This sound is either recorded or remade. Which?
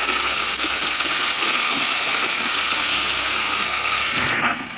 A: remade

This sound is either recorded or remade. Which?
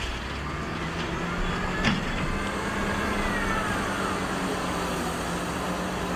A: recorded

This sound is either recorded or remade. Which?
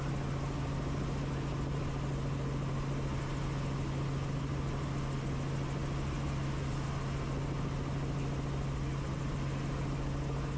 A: recorded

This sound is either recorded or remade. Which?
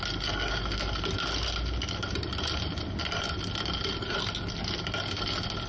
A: recorded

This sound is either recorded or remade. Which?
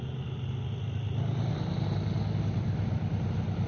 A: recorded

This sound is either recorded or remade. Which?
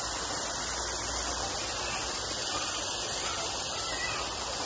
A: recorded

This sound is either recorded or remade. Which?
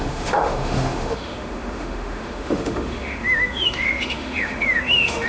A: remade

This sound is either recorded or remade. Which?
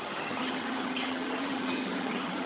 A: remade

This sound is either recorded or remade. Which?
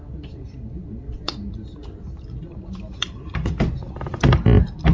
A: recorded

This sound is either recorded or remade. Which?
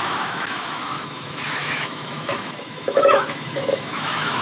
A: remade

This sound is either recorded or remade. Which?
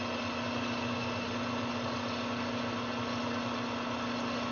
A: recorded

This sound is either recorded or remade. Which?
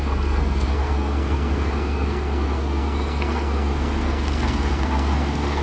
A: remade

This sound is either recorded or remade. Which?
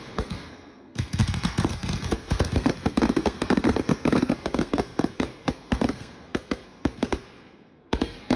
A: remade